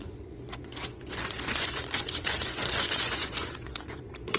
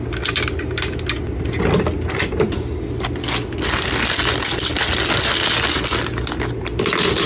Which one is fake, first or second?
first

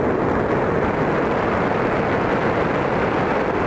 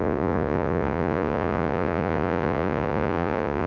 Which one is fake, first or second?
second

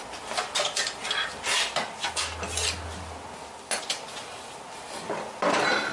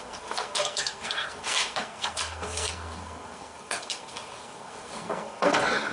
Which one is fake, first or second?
second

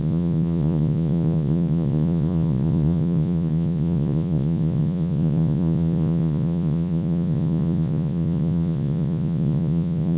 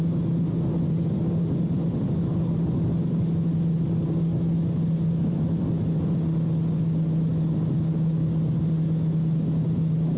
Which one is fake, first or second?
first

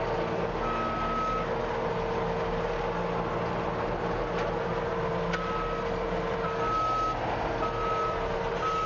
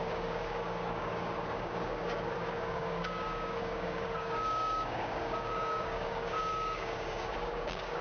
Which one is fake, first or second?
second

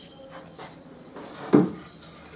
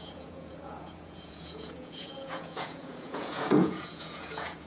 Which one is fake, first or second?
second